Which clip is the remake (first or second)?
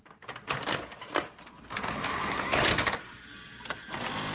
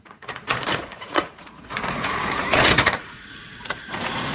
second